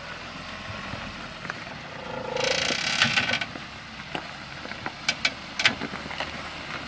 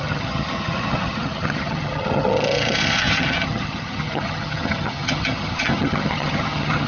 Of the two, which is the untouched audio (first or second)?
first